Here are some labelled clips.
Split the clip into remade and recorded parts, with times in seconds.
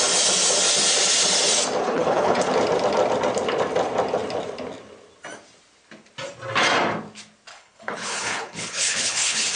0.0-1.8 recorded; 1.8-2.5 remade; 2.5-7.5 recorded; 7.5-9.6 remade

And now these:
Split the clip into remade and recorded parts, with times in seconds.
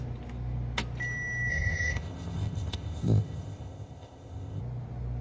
0.0-1.5 recorded; 1.5-4.6 remade; 4.6-5.2 recorded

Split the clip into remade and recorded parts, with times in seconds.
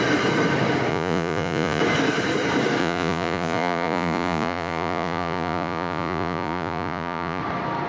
0.0-0.9 recorded; 0.9-1.8 remade; 1.8-2.8 recorded; 2.8-7.4 remade; 7.4-7.9 recorded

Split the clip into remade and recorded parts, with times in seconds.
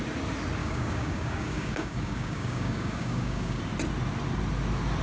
0.0-0.6 recorded; 0.6-3.6 remade; 3.6-5.0 recorded